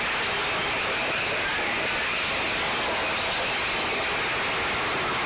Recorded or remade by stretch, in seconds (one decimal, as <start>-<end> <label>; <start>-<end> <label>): 0.0-0.6 recorded; 0.6-2.5 remade; 2.5-5.3 recorded